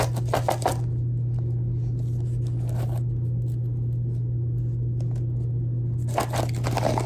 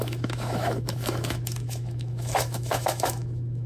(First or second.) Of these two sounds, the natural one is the first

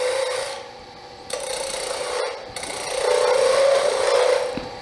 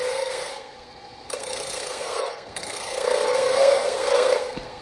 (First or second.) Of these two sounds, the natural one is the first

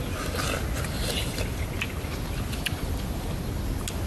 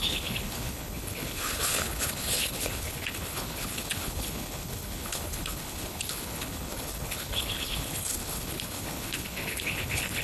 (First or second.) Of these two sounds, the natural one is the first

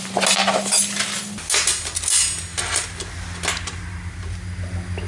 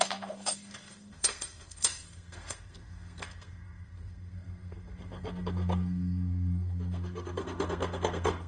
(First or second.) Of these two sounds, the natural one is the first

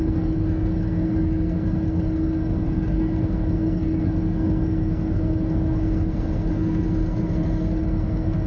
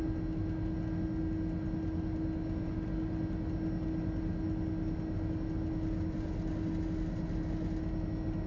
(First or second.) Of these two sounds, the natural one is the second